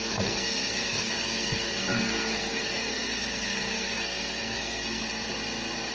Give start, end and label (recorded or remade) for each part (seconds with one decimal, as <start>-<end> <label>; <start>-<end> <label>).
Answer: 0.0-5.0 remade; 5.0-5.9 recorded